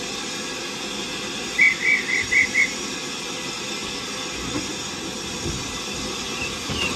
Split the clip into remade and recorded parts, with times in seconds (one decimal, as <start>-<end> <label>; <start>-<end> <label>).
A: 0.0-7.0 recorded

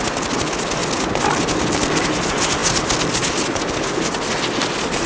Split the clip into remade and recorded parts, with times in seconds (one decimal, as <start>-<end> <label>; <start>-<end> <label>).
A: 0.0-5.1 recorded

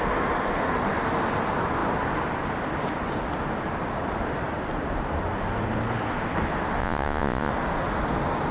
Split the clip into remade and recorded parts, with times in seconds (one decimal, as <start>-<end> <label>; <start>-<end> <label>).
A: 0.0-6.8 recorded; 6.8-7.5 remade; 7.5-8.5 recorded

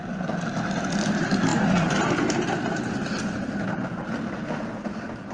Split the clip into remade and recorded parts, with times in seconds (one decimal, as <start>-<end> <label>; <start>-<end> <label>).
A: 0.0-5.3 recorded

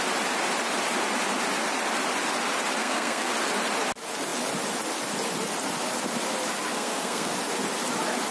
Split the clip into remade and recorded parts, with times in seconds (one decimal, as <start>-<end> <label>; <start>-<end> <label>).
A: 0.0-2.8 recorded; 2.8-3.3 remade; 3.3-6.7 recorded; 6.7-7.3 remade; 7.3-8.3 recorded